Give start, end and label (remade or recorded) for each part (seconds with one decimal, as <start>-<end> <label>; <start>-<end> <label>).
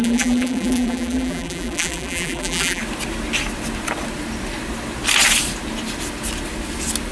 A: 0.0-2.8 remade; 2.8-7.1 recorded